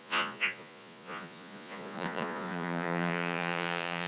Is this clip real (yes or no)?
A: no